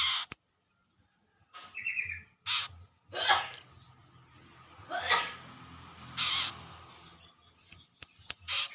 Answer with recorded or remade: recorded